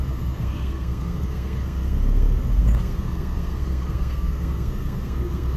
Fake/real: fake